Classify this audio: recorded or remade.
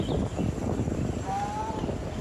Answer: recorded